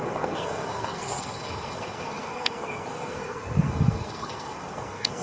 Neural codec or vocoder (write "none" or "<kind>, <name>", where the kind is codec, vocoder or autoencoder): codec, SNAC